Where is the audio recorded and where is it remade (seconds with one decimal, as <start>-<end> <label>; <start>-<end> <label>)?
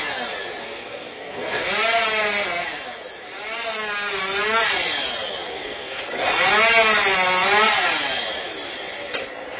0.0-0.6 recorded; 0.6-1.7 remade; 1.7-5.5 recorded; 5.5-6.0 remade; 6.0-9.6 recorded